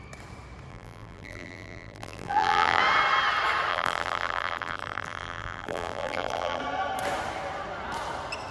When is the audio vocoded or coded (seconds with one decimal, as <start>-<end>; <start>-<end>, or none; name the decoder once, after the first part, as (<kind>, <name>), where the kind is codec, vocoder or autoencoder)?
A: 0.7-2.8 (vocoder, BigVGAN v2); 3.7-6.6